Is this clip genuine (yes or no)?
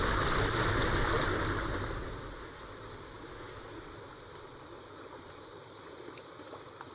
yes